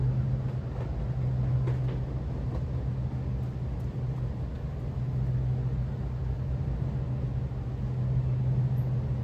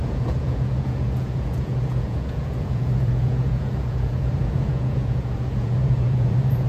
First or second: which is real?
first